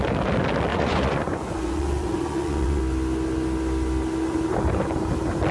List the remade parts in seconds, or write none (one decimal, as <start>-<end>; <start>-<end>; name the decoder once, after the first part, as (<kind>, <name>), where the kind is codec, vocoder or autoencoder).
0.7-2.8 (vocoder, Vocos)